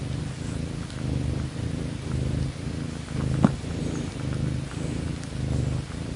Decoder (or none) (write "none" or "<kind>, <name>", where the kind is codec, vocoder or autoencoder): none